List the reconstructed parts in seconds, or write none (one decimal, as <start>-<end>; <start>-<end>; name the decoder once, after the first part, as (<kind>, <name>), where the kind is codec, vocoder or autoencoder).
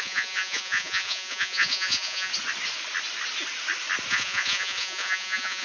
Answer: 0.0-2.3 (vocoder, Vocos); 4.1-5.6